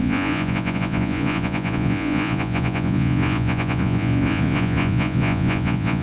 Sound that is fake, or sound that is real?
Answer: fake